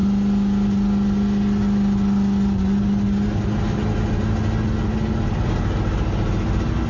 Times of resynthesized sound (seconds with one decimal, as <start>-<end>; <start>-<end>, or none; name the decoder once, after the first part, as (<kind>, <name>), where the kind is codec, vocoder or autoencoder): none